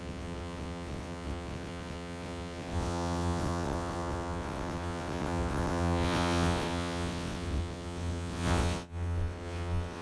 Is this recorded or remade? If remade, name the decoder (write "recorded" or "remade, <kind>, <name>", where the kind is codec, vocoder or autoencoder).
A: remade, vocoder, WaveNeXt